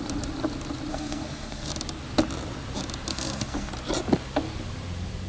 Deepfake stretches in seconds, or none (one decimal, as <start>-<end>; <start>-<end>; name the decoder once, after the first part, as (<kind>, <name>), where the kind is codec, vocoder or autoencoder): 0.9-1.7 (codec, SNAC); 3.1-3.7